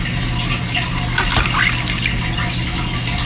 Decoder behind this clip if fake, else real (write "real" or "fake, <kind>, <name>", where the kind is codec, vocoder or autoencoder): real